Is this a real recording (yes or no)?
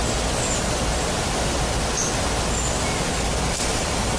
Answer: yes